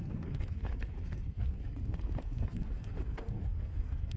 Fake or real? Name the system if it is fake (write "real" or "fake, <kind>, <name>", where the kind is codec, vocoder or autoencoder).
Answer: fake, codec, SNAC